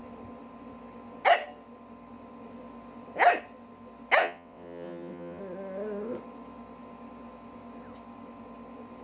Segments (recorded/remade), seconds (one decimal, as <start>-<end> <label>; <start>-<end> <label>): 0.0-4.2 recorded; 4.2-5.4 remade; 5.4-9.0 recorded